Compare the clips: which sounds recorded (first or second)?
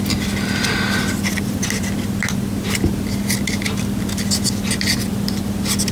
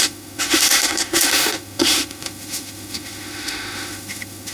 first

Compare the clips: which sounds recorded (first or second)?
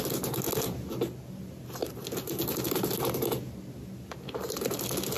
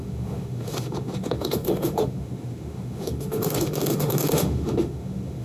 first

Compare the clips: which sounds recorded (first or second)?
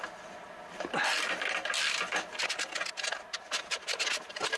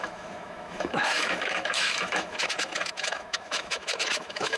first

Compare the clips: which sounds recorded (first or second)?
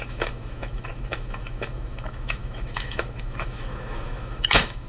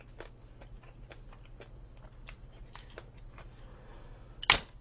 second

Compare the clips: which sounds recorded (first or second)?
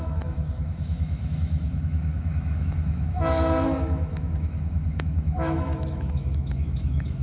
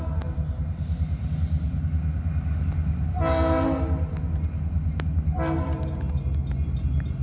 second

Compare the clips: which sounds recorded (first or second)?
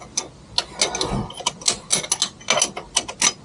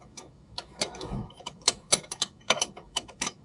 first